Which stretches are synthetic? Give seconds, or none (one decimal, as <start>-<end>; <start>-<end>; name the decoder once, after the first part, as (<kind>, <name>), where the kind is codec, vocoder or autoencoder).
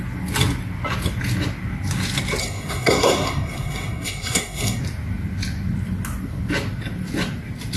2.4-4.8 (codec, SNAC)